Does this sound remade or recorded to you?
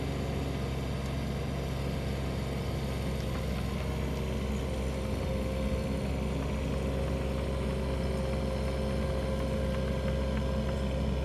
recorded